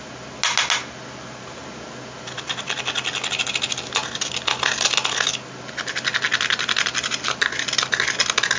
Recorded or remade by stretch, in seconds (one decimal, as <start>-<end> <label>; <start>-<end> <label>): 0.0-8.6 recorded